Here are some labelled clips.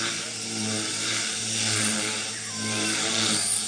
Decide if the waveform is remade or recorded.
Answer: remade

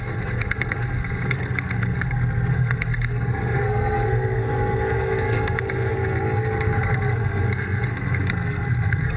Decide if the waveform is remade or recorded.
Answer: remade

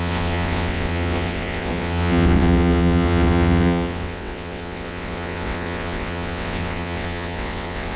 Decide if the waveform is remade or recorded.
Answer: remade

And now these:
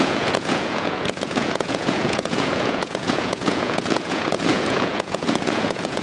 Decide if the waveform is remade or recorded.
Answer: remade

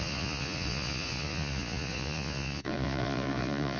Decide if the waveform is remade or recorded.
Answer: remade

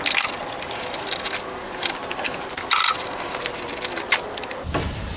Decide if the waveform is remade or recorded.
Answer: recorded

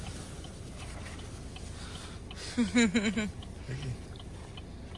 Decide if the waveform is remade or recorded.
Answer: recorded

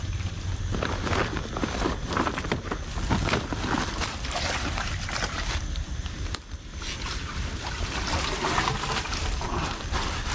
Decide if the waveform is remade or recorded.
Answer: recorded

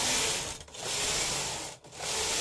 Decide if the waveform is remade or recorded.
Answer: recorded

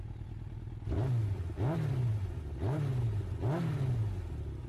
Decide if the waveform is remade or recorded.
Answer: recorded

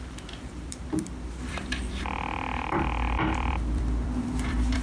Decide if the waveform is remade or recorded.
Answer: remade